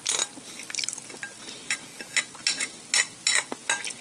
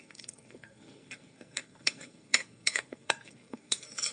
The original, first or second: first